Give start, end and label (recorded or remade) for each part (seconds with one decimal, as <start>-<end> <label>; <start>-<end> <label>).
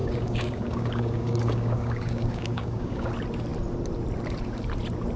0.0-3.1 remade; 3.1-5.2 recorded